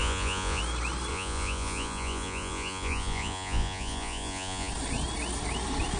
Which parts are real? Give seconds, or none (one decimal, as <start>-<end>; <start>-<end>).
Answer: 0.6-1.1; 4.7-6.0